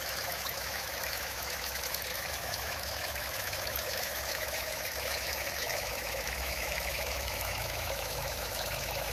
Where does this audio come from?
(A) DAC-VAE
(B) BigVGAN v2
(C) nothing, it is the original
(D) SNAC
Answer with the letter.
A